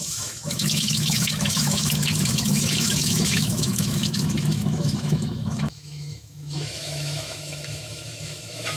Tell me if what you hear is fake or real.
fake